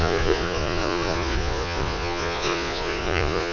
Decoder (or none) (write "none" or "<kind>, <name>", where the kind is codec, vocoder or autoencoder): vocoder, Vocos